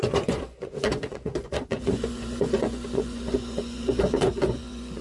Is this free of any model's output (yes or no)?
no